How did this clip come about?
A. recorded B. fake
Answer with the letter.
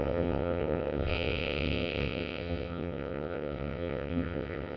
B